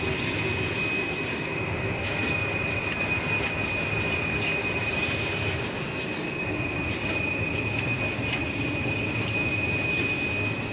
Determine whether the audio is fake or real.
real